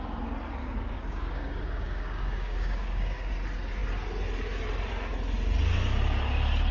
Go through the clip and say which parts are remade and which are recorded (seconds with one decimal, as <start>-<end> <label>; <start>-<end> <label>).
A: 0.0-0.6 recorded; 0.6-3.3 remade; 3.3-6.7 recorded